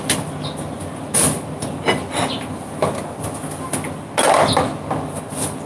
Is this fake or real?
real